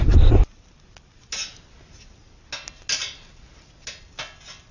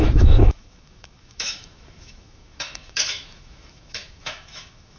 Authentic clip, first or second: first